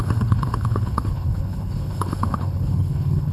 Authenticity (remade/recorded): remade